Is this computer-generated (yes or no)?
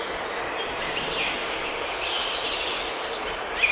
no